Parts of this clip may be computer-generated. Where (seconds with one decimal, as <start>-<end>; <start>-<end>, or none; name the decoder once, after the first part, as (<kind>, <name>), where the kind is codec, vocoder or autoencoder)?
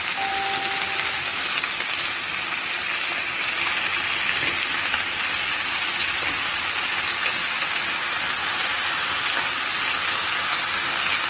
8.4-9.2 (vocoder, BigVGAN v2)